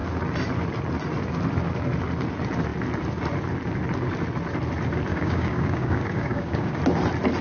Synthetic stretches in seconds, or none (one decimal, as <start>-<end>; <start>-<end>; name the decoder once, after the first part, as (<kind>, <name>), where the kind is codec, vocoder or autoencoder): 5.1-6.8 (codec, DAC)